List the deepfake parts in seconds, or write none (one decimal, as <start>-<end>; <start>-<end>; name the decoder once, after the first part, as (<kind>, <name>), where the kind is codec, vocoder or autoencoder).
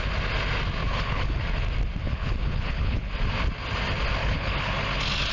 0.8-1.4 (codec, HILCodec); 2.0-3.1; 4.2-4.7